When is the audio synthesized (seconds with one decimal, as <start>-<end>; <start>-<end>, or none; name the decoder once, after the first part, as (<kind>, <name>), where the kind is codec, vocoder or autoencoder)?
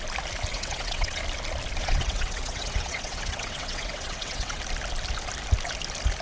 0.5-1.2 (vocoder, WaveNeXt); 1.8-4.6